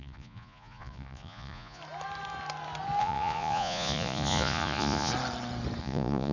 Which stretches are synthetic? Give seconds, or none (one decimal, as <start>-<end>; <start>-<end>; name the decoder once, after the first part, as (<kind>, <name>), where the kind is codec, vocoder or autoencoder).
0.0-1.8 (vocoder, Vocos); 3.0-5.1; 5.8-6.3